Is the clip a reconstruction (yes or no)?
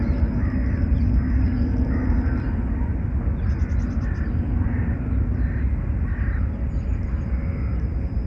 no